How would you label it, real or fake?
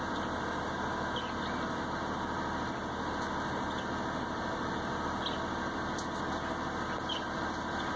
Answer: real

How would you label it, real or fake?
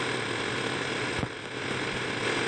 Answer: real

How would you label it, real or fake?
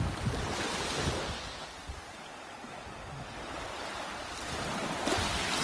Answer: real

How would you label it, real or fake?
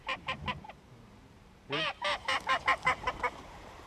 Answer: fake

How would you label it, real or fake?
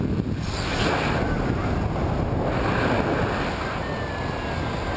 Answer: real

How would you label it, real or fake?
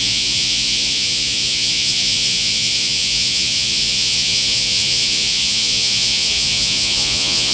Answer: fake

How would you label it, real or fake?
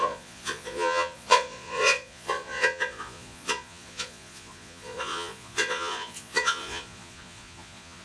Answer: fake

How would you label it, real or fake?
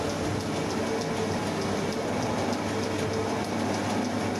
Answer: real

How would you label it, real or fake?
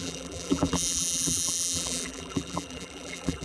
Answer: fake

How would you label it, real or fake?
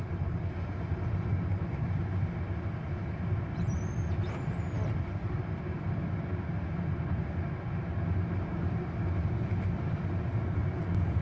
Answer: real